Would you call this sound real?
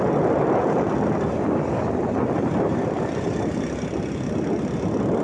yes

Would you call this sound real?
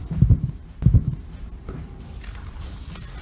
yes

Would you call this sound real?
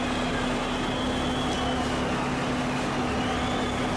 yes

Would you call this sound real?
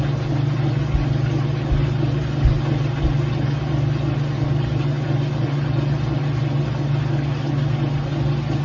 yes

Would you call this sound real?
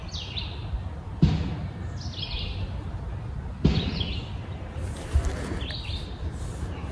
yes